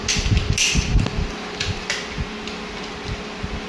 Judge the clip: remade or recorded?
recorded